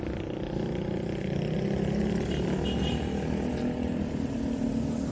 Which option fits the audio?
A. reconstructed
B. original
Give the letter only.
B